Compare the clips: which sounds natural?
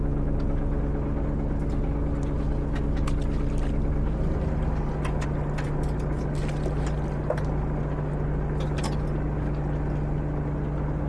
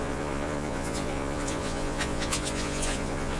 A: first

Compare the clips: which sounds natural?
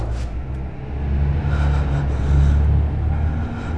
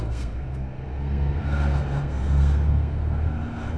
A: first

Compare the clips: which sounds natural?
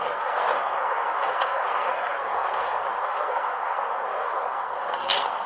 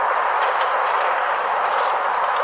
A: second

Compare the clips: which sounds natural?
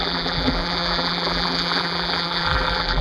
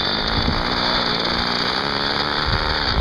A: second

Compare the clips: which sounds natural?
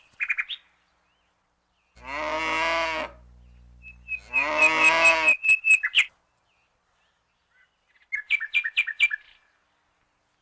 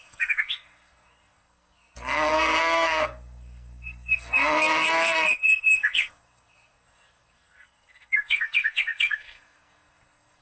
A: first